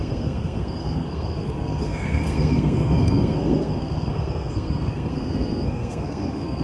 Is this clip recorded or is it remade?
remade